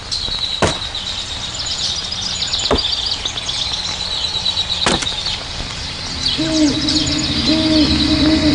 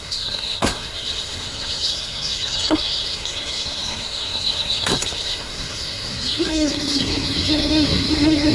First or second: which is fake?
second